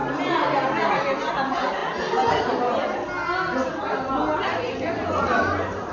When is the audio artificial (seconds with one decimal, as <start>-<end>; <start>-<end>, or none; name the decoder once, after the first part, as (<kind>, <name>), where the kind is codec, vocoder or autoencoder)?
none